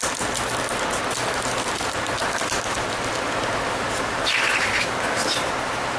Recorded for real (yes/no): yes